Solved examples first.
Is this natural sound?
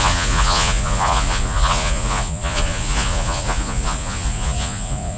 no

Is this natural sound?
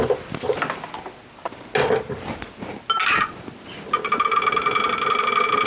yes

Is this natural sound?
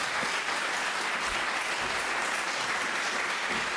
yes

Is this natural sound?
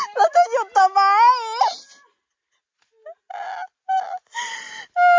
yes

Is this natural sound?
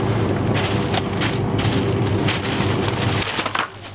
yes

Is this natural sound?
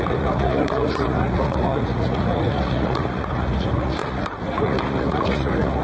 no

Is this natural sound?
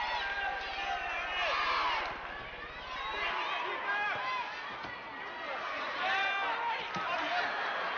yes